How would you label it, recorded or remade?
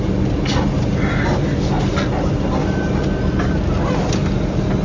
recorded